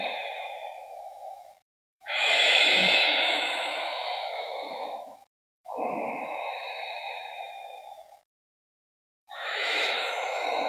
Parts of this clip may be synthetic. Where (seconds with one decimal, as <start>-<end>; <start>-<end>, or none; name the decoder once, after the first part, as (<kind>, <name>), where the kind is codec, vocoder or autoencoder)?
0.0-10.7 (autoencoder, DAC-VAE)